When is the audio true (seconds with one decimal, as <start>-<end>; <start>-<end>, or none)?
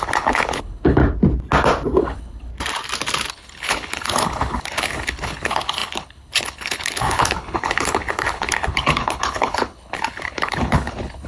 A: 1.0-2.0; 2.5-3.3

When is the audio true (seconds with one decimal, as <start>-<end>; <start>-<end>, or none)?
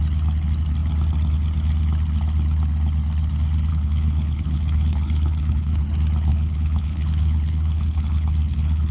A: 0.0-3.7; 5.8-6.3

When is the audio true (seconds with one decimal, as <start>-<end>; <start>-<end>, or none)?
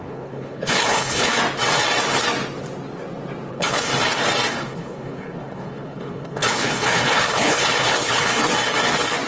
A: 1.3-3.5; 3.9-4.5; 8.4-9.3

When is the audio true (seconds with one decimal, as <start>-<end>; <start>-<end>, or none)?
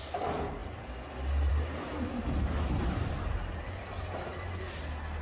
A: 0.0-5.2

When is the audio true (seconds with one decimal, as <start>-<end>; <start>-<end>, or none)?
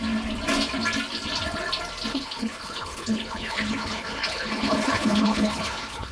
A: 0.0-2.1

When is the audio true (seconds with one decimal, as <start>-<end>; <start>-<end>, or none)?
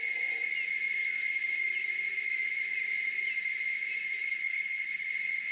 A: 0.0-4.2; 5.1-5.5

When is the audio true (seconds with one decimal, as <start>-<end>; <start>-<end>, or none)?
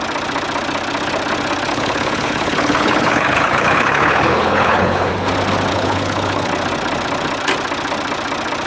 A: 0.0-1.7; 5.1-5.7; 6.5-8.7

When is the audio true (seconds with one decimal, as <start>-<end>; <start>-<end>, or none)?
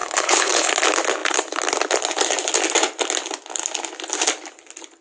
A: 0.7-5.0